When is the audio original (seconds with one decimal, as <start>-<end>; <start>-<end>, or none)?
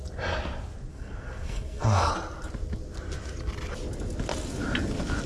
0.0-0.9; 2.1-5.3